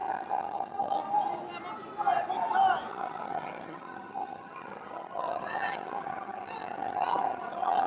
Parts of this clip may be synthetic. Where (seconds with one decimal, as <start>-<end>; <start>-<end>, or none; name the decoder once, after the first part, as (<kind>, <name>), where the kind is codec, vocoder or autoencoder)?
0.0-1.0 (vocoder, HiFi-GAN); 2.9-7.9